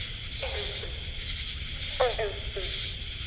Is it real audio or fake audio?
real